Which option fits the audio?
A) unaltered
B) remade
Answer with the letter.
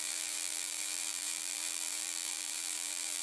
B